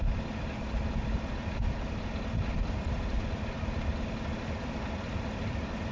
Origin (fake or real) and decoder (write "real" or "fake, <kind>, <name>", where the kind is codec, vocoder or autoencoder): fake, vocoder, BigVGAN v2